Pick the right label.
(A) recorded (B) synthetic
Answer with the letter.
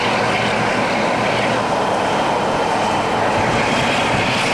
A